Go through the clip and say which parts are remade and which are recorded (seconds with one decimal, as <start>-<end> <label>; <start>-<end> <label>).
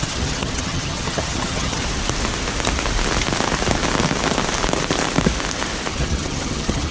0.0-1.8 remade; 1.8-5.9 recorded; 5.9-6.9 remade